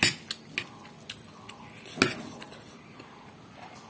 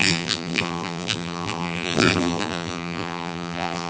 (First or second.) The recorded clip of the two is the first